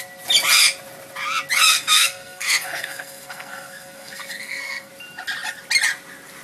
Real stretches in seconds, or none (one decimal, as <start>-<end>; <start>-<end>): 0.0-1.7; 4.9-6.4